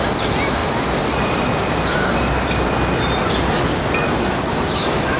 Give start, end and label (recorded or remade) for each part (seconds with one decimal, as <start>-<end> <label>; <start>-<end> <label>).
0.0-5.2 recorded

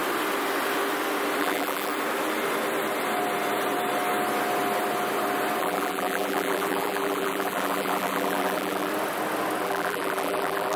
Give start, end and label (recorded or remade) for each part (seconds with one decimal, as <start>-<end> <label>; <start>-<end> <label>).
0.0-1.4 recorded; 1.4-1.9 remade; 1.9-5.6 recorded; 5.6-8.9 remade; 8.9-9.6 recorded; 9.6-10.8 remade

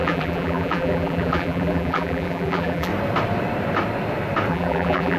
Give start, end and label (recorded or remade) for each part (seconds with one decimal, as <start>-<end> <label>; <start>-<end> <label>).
0.0-2.9 remade; 2.9-4.5 recorded; 4.5-5.2 remade

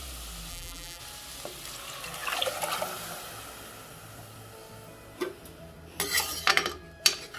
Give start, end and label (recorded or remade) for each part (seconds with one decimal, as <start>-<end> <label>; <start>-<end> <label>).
0.0-0.5 recorded; 0.5-1.0 remade; 1.0-7.4 recorded